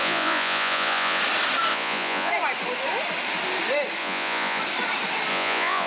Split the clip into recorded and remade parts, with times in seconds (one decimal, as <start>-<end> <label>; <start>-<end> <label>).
0.0-1.2 remade; 1.2-1.7 recorded; 1.7-2.3 remade; 2.3-4.0 recorded; 4.0-4.6 remade; 4.6-5.3 recorded; 5.3-5.9 remade